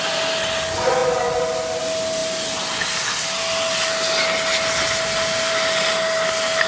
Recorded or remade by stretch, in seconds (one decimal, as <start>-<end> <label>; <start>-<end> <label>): 0.0-6.7 recorded